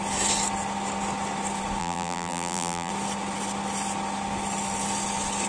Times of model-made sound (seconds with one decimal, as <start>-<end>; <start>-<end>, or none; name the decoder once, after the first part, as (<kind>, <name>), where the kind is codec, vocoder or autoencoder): 1.8-2.9 (vocoder, BigVGAN v2)